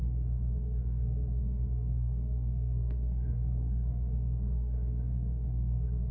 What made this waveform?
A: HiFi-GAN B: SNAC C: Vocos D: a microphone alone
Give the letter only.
B